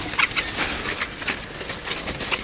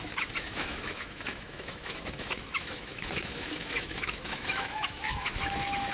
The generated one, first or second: second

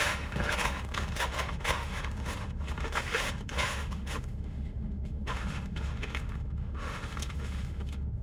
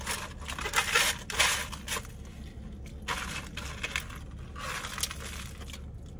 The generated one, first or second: first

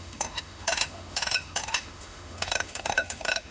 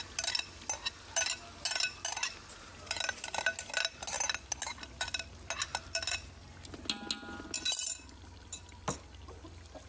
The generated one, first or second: first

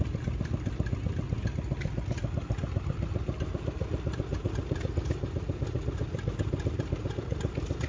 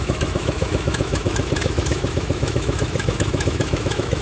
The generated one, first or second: second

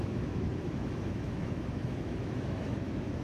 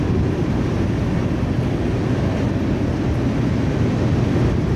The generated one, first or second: first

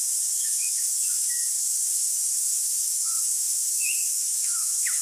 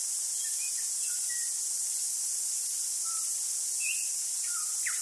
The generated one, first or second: first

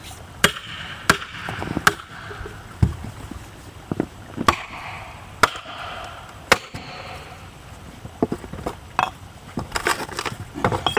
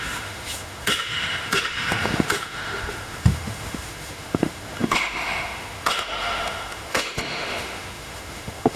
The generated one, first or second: second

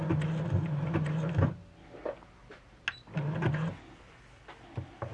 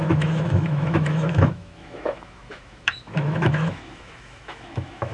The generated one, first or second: second